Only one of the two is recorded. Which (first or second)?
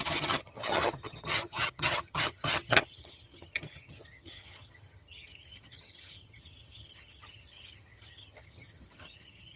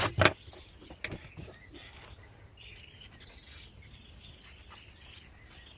second